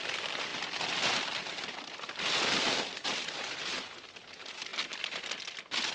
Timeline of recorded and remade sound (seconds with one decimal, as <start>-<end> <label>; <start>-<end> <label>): 0.0-5.9 recorded

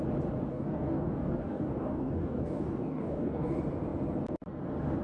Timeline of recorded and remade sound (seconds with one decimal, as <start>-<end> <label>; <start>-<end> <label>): 0.0-0.5 recorded; 0.5-3.5 remade; 3.5-5.0 recorded

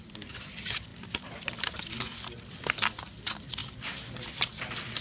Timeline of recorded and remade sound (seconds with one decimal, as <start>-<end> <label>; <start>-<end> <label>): 0.0-5.0 recorded

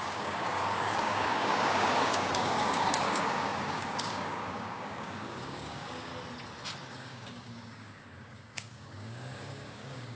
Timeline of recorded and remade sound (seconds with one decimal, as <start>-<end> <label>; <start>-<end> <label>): 0.0-6.1 remade; 6.1-6.9 recorded; 6.9-10.2 remade

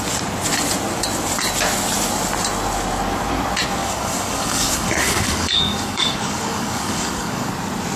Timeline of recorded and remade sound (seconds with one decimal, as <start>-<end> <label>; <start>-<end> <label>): 0.0-3.8 recorded; 3.8-7.5 remade; 7.5-8.0 recorded

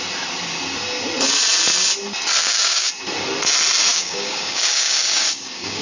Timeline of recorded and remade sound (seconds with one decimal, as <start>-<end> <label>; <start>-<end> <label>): 0.0-2.4 recorded; 2.4-2.9 remade; 2.9-3.9 recorded; 3.9-5.8 remade